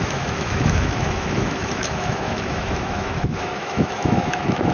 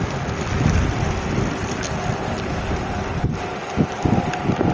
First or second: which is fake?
first